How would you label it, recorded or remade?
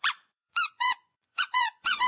remade